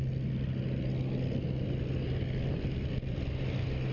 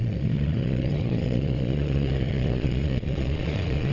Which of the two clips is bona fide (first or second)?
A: first